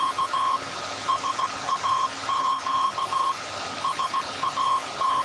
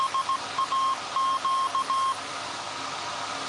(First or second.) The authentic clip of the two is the second